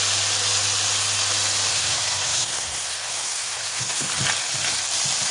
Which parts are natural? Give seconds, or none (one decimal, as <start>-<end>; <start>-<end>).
0.0-1.7; 4.1-5.3